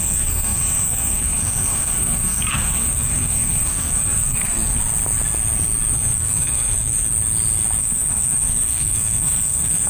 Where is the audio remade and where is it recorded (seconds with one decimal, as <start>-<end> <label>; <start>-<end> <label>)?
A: 0.0-4.8 remade; 4.8-5.9 recorded; 5.9-7.1 remade; 7.1-7.8 recorded; 7.8-9.9 remade

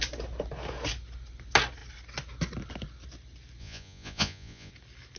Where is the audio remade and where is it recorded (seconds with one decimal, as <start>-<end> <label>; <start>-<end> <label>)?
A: 0.0-3.6 recorded; 3.6-4.7 remade; 4.7-5.2 recorded

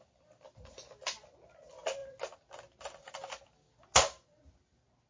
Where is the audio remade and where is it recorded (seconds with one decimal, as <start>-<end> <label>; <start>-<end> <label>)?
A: 0.0-5.1 recorded

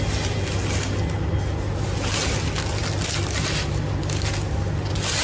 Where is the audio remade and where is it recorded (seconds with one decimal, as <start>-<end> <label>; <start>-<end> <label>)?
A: 0.0-5.2 recorded

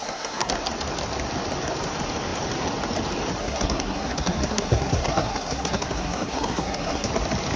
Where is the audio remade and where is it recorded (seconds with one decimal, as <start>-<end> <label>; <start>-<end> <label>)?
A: 0.0-0.5 remade; 0.5-3.4 recorded; 3.4-7.1 remade; 7.1-7.6 recorded

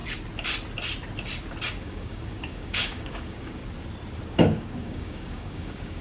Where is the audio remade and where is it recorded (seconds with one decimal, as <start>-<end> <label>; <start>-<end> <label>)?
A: 0.0-1.8 recorded; 1.8-3.6 remade; 3.6-4.3 recorded; 4.3-6.0 remade

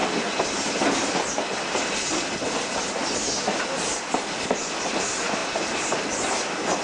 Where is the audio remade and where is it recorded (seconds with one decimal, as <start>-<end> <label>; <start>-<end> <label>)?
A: 0.0-6.8 recorded